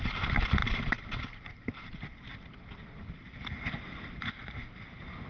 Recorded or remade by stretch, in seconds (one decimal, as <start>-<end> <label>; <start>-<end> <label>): 0.0-5.3 recorded